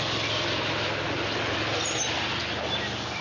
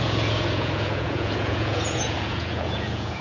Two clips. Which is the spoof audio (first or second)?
second